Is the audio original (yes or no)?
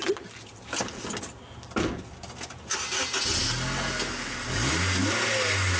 yes